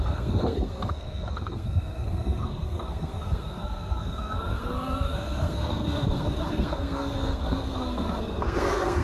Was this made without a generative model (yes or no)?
no